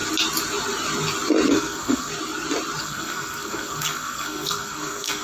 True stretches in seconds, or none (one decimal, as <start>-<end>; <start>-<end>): 0.0-1.5; 2.1-2.8